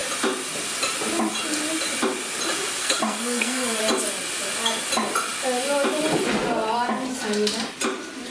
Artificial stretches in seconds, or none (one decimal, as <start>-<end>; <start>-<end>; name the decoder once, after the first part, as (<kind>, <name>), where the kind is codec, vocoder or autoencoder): 2.8-3.8 (codec, SNAC)